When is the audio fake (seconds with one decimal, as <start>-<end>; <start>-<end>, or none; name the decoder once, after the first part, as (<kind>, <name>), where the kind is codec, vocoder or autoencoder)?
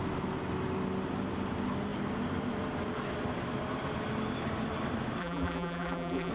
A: 5.2-6.3 (vocoder, BigVGAN v2)